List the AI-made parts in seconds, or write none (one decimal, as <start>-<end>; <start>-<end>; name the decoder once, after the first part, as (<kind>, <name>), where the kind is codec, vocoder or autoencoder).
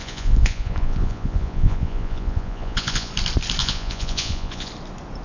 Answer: 0.0-3.1 (vocoder, Vocos); 3.6-4.7